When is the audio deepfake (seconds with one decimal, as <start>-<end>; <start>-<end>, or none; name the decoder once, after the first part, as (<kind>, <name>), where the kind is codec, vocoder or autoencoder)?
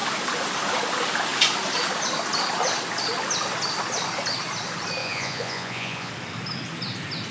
5.0-6.1 (vocoder, Vocos)